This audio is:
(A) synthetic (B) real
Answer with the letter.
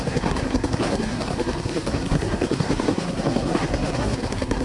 A